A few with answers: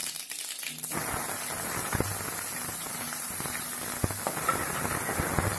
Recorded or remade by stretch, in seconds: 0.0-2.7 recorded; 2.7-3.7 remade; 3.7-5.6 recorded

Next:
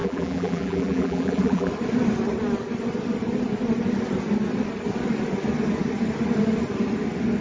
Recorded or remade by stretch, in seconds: 0.0-1.7 remade; 1.7-7.4 recorded